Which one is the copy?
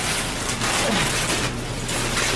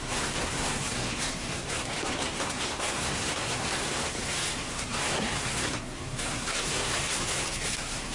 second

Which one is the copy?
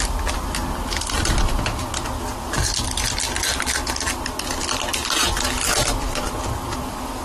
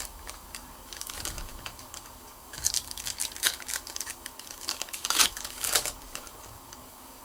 second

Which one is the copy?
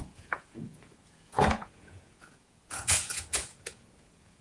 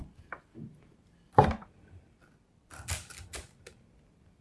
first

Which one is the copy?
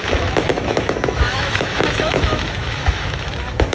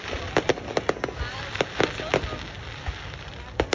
first